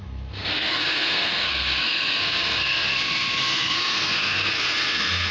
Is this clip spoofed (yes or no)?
yes